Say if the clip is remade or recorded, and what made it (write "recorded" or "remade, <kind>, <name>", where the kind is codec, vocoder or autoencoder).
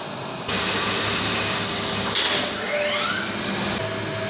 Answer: recorded